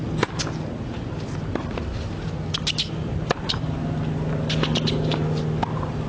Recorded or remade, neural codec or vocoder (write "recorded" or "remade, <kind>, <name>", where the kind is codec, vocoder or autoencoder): recorded